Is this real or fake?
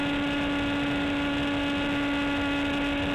real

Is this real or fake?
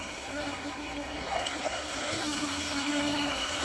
fake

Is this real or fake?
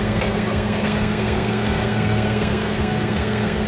fake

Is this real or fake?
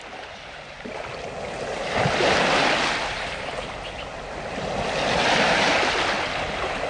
real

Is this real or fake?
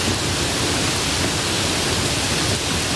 real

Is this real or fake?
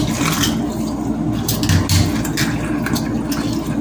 real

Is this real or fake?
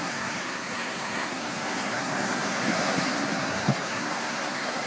fake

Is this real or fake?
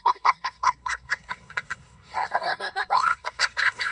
fake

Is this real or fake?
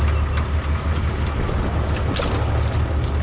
real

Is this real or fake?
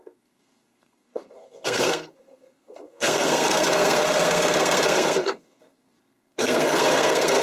fake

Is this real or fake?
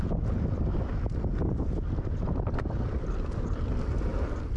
real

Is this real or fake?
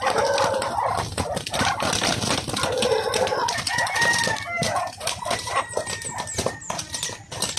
real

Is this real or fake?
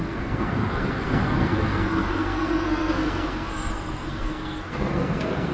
fake